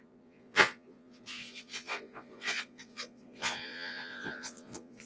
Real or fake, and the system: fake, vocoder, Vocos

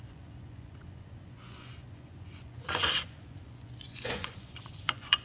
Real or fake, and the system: fake, vocoder, Vocos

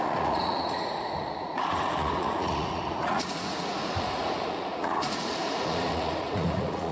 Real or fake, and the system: fake, vocoder, Vocos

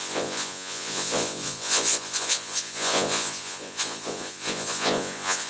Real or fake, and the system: fake, vocoder, Vocos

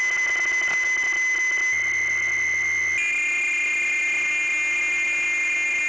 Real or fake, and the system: real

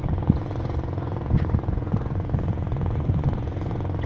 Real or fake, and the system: fake, vocoder, Vocos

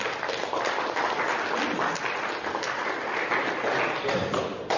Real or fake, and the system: real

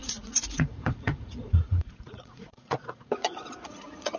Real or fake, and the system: fake, vocoder, Vocos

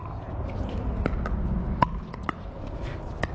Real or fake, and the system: real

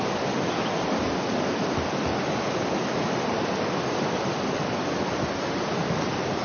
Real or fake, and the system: real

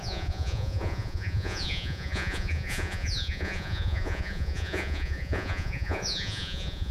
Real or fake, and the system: fake, vocoder, Vocos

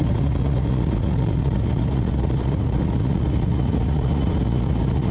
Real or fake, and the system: fake, vocoder, Vocos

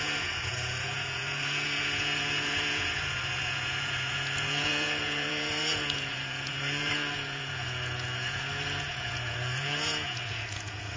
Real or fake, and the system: fake, vocoder, Vocos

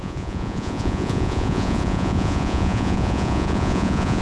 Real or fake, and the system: fake, vocoder, Vocos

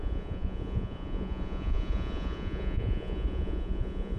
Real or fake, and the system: fake, vocoder, Vocos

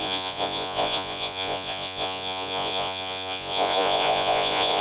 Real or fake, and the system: fake, vocoder, Vocos